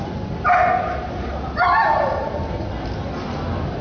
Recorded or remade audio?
recorded